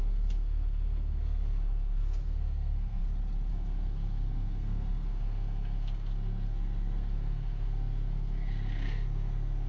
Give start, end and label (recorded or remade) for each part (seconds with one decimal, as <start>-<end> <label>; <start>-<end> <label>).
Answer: 0.0-3.0 remade; 3.0-3.5 recorded; 3.5-9.7 remade